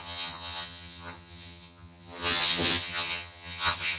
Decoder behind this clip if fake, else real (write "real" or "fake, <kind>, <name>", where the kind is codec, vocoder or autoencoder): fake, vocoder, HiFi-GAN